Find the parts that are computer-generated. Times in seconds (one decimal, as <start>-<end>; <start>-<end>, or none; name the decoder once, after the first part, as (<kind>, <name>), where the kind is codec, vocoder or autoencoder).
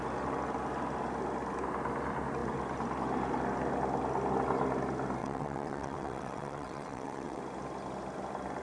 5.2-7.4 (vocoder, WaveNeXt)